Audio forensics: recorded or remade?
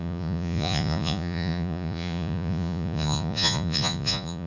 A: remade